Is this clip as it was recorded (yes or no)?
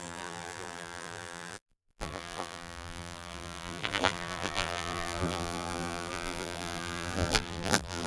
no